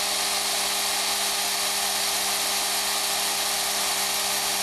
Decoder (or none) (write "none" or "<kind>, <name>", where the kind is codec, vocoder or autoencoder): none